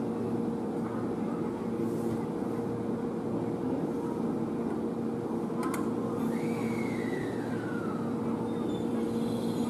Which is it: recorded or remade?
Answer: recorded